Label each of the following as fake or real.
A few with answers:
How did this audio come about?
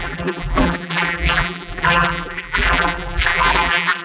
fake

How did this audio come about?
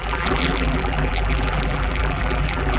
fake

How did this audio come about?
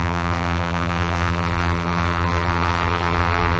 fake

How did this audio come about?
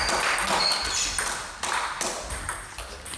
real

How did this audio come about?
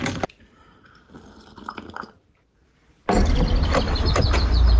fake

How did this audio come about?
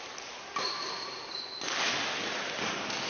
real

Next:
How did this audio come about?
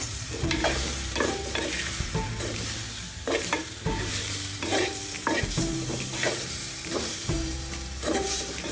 fake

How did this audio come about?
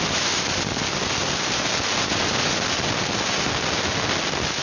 real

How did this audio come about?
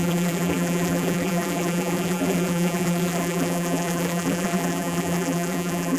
fake